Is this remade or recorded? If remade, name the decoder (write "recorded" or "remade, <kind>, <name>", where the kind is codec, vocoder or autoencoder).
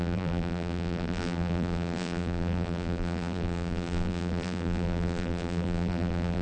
remade, vocoder, BigVGAN v2